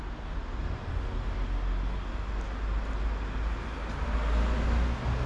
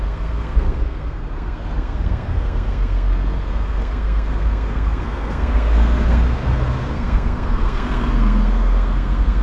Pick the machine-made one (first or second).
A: second